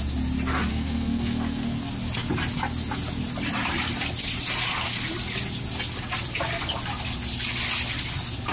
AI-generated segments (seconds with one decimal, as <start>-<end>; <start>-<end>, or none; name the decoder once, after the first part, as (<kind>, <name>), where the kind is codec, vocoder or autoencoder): 0.7-1.8 (codec, SNAC)